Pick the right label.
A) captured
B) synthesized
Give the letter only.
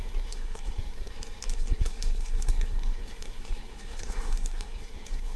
B